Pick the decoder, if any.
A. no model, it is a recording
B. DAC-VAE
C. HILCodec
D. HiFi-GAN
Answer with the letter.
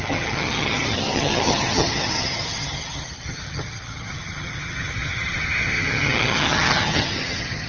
D